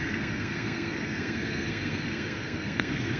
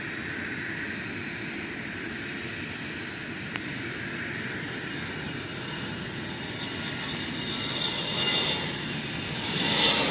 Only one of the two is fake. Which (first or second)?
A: first